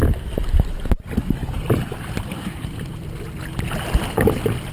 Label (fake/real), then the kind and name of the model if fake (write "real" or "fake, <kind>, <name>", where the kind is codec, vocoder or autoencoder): real